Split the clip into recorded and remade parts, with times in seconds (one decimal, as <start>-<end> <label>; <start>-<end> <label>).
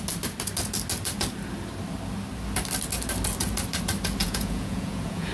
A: 0.0-4.2 recorded; 4.2-5.3 remade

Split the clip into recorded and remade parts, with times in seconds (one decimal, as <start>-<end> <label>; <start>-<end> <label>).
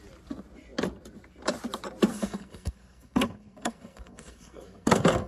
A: 0.0-2.1 recorded; 2.1-5.3 remade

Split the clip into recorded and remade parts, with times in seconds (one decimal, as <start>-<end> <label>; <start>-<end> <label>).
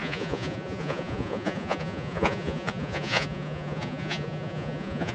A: 0.0-5.1 remade